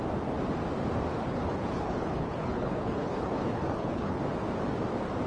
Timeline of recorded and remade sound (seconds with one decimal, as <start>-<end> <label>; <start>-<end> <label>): 0.0-1.1 recorded; 1.1-4.2 remade; 4.2-5.3 recorded